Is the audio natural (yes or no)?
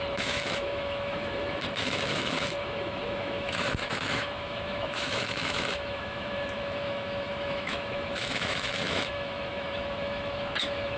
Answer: no